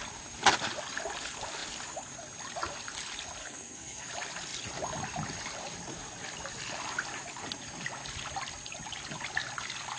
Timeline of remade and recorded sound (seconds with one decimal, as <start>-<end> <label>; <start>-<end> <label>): 0.0-3.4 recorded; 3.4-4.1 remade; 4.1-10.0 recorded

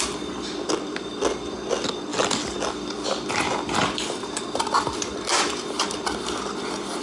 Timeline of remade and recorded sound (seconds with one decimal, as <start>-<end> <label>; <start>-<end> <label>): 0.0-7.0 recorded